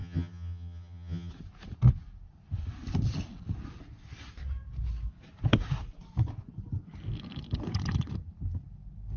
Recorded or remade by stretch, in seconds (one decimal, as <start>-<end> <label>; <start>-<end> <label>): 0.0-1.3 remade; 1.3-9.2 recorded